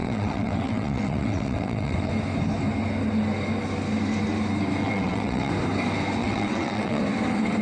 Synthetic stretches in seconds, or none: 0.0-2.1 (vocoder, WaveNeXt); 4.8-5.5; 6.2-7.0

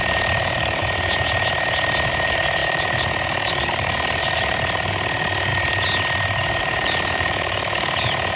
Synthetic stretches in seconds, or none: 0.0-0.8 (vocoder, BigVGAN v2); 2.1-5.5; 6.6-8.4